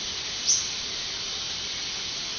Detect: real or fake real